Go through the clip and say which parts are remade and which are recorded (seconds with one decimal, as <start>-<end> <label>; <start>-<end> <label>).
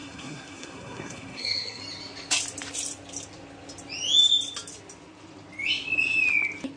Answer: 0.0-1.8 remade; 1.8-6.8 recorded